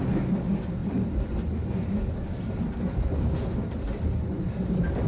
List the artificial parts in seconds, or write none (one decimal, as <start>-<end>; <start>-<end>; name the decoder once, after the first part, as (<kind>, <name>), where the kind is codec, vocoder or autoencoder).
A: none